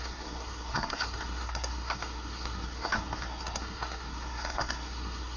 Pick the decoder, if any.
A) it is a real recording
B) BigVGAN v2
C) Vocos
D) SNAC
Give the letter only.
D